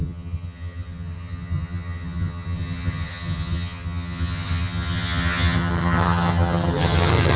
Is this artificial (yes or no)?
yes